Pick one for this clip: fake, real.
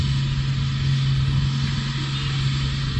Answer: real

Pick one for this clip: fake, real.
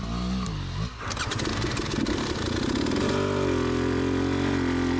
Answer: real